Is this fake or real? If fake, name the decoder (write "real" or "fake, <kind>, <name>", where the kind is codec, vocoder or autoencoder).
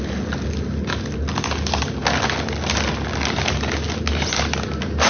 real